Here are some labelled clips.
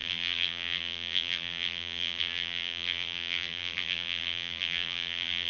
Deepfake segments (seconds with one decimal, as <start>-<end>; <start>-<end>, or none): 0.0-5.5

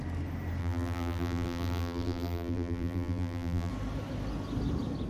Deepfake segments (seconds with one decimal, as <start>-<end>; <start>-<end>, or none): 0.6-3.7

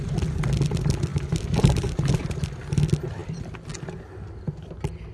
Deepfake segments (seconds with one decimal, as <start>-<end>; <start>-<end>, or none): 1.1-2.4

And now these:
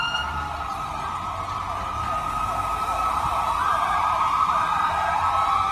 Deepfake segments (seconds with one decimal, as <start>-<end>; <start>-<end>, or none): 2.7-4.9

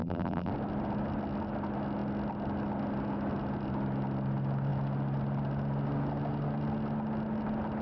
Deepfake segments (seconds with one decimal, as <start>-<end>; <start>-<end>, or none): 0.0-0.5

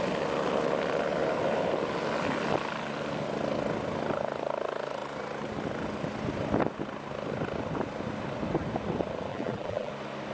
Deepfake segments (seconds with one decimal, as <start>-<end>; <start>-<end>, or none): 9.3-9.9

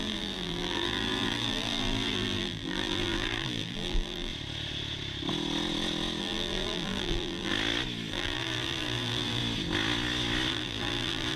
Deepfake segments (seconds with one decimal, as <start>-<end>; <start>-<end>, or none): 0.0-4.3; 6.2-7.5; 8.1-9.4; 10.5-11.4

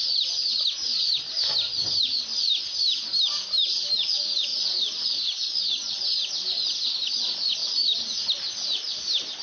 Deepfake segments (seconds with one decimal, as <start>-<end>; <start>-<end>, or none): 2.3-3.0; 4.5-6.7; 7.6-8.2